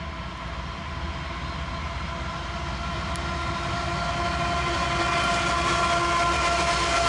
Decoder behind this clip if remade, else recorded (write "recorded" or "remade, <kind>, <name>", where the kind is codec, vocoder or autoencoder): recorded